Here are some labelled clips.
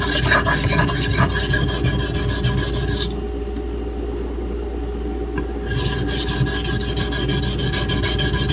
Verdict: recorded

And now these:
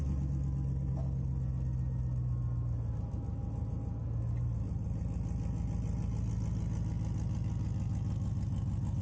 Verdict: recorded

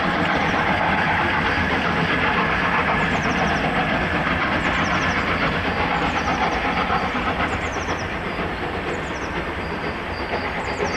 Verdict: recorded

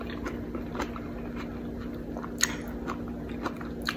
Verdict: recorded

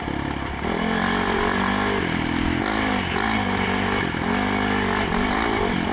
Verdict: recorded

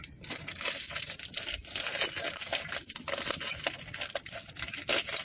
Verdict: recorded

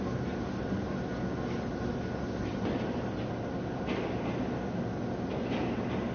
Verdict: recorded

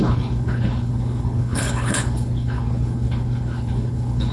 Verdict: remade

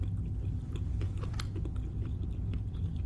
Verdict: recorded